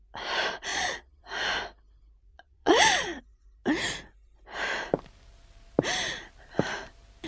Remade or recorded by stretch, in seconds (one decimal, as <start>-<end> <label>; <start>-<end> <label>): 0.0-0.7 recorded; 0.7-1.2 remade; 1.2-2.3 recorded; 2.3-3.2 remade; 3.2-7.3 recorded